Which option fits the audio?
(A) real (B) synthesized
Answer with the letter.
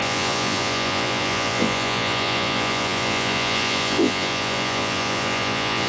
B